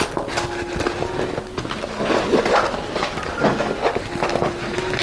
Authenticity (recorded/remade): recorded